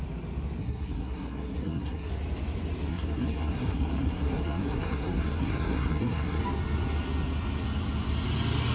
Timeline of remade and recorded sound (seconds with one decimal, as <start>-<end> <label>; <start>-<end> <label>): 0.0-0.6 recorded; 0.6-2.1 remade; 2.1-2.9 recorded; 2.9-6.4 remade; 6.4-8.7 recorded